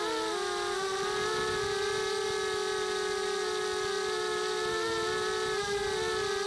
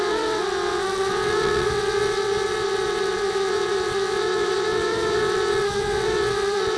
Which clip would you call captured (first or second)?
first